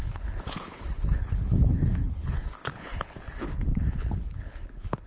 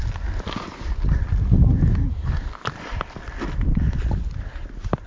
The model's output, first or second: first